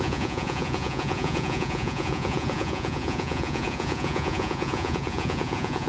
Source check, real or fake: fake